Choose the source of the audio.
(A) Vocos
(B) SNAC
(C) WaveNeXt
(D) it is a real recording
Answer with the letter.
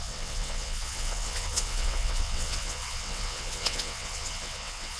C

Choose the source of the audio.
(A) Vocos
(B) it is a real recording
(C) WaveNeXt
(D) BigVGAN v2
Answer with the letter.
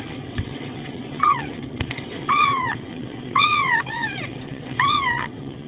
C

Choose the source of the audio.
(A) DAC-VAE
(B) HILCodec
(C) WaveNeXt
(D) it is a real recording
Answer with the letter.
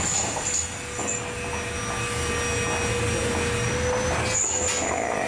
D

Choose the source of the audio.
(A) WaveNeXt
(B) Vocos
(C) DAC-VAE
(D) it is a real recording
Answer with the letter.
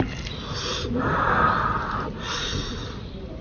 D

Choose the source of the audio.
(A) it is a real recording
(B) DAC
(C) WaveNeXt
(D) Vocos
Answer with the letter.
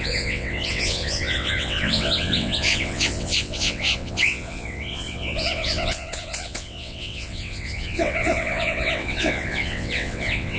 C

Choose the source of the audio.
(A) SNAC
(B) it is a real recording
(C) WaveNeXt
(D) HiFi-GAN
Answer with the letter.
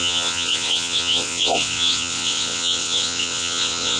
C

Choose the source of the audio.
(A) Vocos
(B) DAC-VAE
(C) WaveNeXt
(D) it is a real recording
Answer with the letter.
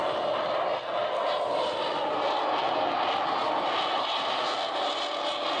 D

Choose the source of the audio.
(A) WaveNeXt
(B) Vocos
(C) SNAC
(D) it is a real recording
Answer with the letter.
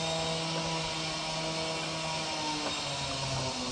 D